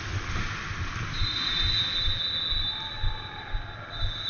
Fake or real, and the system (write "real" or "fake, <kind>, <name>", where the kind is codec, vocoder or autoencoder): real